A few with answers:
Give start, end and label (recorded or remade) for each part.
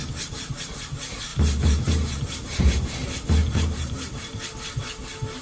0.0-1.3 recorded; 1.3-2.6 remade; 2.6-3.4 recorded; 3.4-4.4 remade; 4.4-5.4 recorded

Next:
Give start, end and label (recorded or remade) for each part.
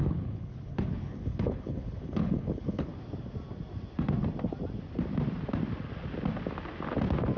0.0-2.9 remade; 2.9-7.4 recorded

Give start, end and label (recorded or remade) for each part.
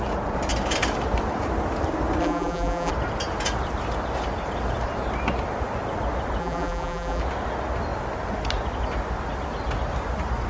0.0-2.2 recorded; 2.2-2.9 remade; 2.9-6.4 recorded; 6.4-7.2 remade; 7.2-10.5 recorded